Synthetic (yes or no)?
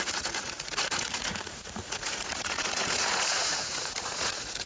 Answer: yes